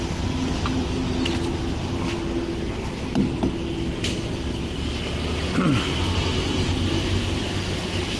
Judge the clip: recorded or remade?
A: recorded